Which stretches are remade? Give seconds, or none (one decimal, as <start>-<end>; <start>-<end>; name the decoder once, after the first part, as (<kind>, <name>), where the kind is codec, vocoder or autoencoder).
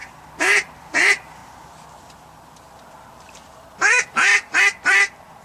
0.0-1.4 (vocoder, BigVGAN v2); 4.6-5.4